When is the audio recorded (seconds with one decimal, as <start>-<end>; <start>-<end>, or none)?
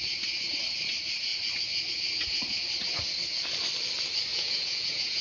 0.0-4.3